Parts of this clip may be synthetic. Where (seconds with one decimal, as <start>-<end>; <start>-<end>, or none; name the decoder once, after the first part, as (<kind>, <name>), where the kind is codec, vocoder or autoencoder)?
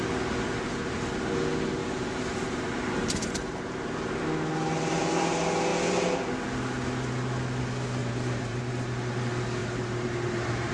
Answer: 1.8-4.2 (vocoder, BigVGAN v2); 8.0-8.6; 9.6-10.7